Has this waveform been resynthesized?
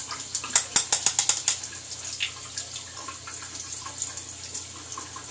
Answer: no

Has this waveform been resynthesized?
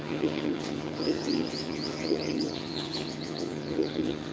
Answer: yes